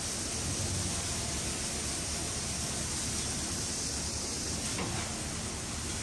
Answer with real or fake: real